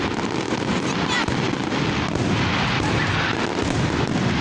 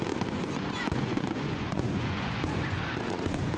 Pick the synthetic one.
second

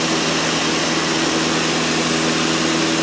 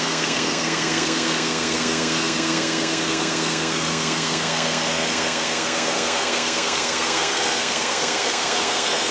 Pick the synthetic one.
second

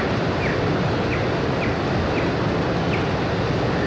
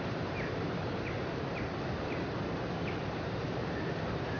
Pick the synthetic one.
second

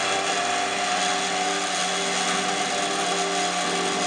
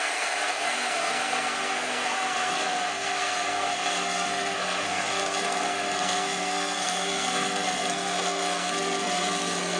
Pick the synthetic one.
second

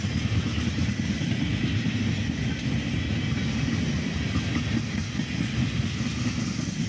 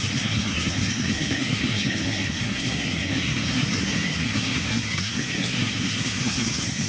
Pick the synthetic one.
second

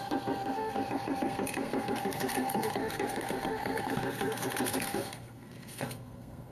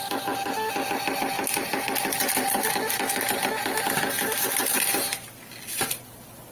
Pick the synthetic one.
first